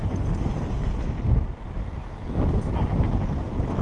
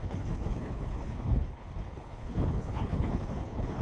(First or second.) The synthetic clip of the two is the second